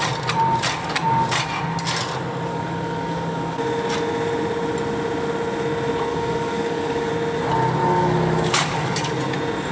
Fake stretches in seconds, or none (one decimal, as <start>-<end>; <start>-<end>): 2.5-3.6; 6.1-7.1; 7.8-9.1